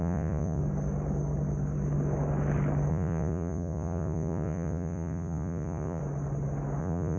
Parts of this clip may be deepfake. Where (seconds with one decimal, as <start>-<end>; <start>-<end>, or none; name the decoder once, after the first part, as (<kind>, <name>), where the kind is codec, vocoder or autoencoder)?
0.0-0.6 (vocoder, Vocos); 2.9-6.0; 6.8-7.2